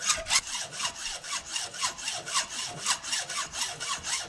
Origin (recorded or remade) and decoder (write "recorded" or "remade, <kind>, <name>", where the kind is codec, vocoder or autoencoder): recorded